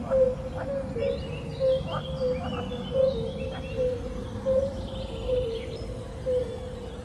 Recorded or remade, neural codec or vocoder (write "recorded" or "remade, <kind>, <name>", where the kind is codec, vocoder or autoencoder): recorded